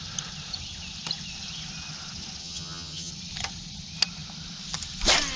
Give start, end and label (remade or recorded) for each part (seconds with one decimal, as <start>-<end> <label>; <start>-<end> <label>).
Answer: 0.0-2.4 recorded; 2.4-3.1 remade; 3.1-5.4 recorded